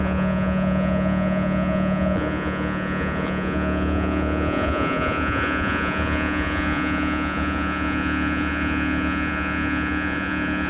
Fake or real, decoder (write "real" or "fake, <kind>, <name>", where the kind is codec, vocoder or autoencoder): fake, vocoder, Vocos